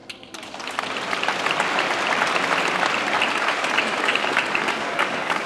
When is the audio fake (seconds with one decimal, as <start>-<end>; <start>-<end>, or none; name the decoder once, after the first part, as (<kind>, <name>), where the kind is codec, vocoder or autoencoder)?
3.3-5.5 (codec, DAC)